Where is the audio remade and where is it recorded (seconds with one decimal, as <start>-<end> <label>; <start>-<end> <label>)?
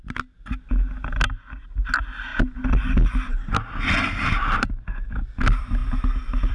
0.0-4.0 recorded; 4.0-5.1 remade; 5.1-6.5 recorded